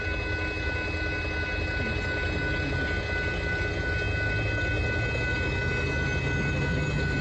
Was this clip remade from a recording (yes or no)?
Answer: no